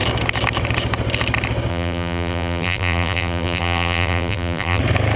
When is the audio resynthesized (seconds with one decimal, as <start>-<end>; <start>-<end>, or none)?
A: 1.7-4.8